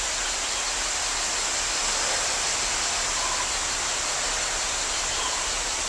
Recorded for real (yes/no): yes